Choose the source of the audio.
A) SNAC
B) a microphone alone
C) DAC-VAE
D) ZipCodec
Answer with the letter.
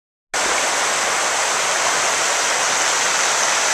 B